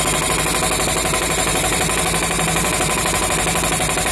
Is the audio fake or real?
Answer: real